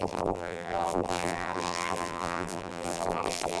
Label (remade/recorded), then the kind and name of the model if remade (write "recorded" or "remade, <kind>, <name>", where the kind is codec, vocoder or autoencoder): remade, vocoder, BigVGAN v2